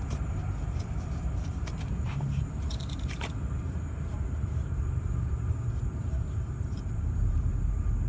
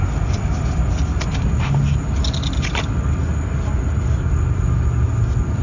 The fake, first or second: first